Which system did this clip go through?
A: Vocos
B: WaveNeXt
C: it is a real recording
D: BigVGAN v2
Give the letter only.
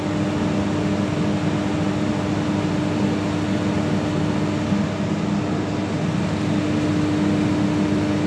C